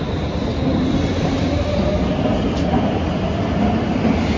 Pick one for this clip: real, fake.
real